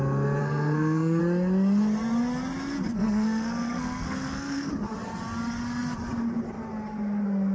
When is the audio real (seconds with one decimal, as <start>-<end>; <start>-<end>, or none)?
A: 0.0-0.4; 1.2-2.9; 4.7-7.5